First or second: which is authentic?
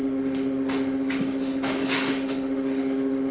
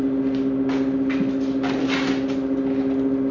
second